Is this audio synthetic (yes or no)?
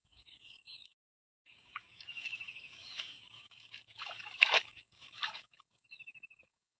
yes